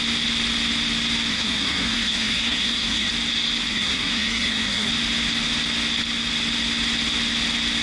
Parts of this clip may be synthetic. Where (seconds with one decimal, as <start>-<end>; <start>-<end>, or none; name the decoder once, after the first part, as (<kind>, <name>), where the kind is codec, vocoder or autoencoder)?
1.3-3.1 (codec, SNAC); 3.7-4.9